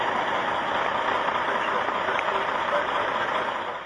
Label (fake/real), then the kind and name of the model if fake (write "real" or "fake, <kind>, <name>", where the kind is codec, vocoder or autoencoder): real